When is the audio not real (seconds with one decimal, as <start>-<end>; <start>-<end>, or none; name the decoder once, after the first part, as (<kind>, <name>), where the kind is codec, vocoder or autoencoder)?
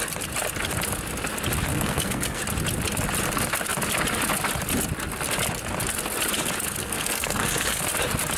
1.7-2.4 (codec, SNAC); 6.8-7.8